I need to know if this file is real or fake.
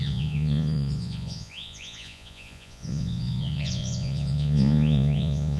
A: fake